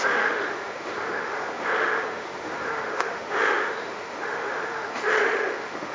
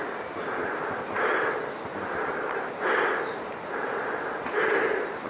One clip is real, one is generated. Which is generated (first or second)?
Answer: first